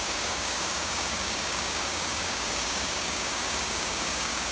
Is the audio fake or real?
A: fake